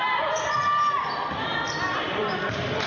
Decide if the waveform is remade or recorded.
remade